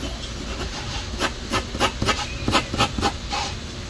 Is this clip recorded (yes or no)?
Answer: yes